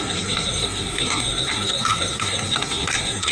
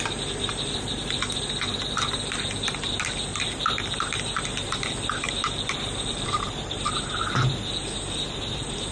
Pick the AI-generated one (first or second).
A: first